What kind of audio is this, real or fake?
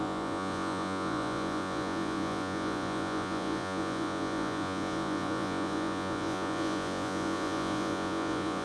fake